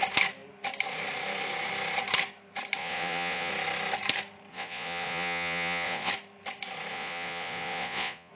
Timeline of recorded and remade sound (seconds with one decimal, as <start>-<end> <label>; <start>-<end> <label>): 0.0-2.8 recorded; 2.8-3.5 remade; 3.5-4.5 recorded; 4.5-6.1 remade; 6.1-6.9 recorded; 6.9-8.3 remade